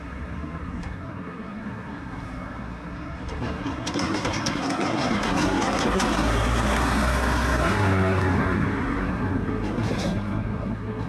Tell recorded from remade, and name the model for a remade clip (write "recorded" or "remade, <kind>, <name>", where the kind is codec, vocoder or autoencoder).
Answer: remade, codec, SNAC